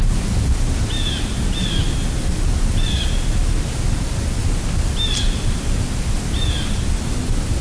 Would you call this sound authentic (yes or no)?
yes